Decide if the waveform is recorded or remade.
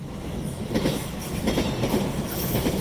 recorded